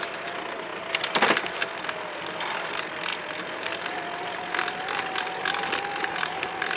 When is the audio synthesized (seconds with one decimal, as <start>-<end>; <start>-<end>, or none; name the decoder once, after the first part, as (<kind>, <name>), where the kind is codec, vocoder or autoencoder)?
none